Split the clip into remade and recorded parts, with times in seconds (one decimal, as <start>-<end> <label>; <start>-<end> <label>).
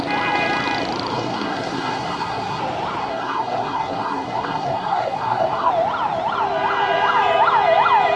0.0-1.1 recorded; 1.1-2.6 remade; 2.6-3.0 recorded; 3.0-5.7 remade; 5.7-8.2 recorded